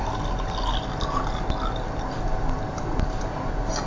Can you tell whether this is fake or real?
real